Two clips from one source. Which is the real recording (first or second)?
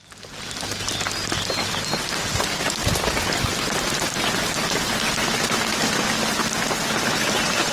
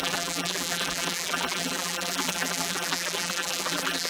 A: first